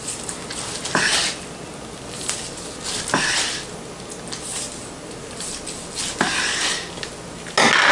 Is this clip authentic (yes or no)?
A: yes